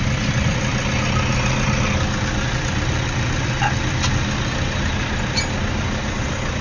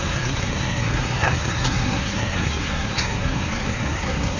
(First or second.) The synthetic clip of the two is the second